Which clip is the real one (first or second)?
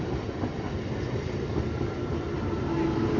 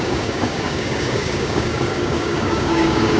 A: first